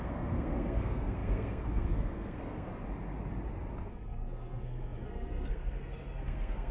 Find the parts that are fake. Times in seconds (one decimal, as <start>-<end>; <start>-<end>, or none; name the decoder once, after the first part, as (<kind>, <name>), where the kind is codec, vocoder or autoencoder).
0.0-2.7 (codec, SNAC); 3.9-6.7